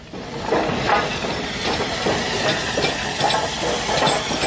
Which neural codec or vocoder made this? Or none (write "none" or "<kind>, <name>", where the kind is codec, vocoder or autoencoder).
none